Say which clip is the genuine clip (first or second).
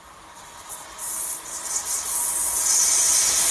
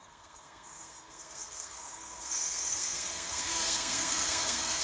first